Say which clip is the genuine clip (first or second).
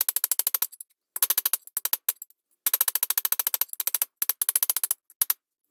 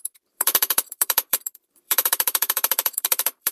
first